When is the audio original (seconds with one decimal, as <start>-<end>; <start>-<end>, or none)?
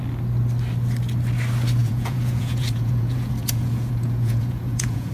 0.0-1.8